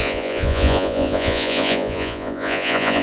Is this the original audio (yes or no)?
no